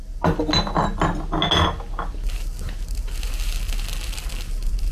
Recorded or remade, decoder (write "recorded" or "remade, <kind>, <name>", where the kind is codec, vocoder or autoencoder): recorded